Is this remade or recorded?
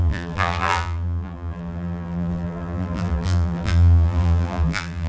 remade